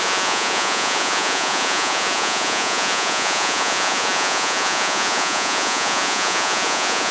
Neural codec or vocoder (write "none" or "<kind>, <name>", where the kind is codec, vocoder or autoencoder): vocoder, Vocos